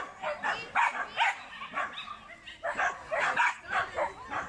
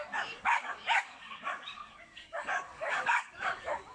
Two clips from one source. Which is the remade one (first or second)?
second